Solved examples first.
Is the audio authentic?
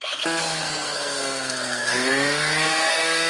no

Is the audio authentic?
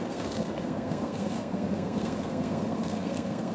no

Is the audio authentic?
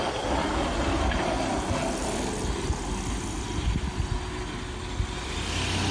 yes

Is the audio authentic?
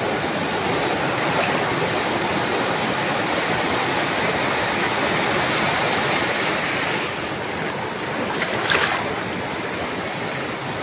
yes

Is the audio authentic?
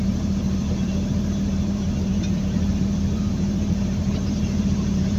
no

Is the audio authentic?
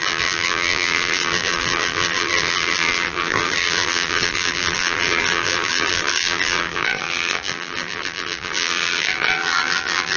no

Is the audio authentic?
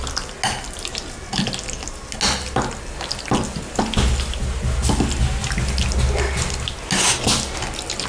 yes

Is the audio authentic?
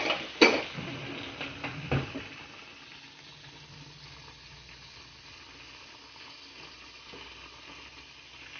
yes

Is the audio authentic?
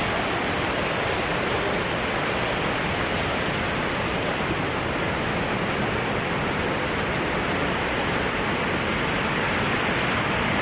yes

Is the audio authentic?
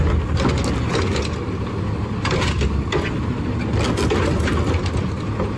yes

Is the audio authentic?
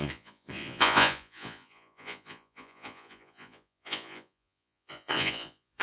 no